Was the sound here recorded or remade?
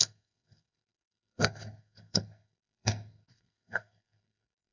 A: remade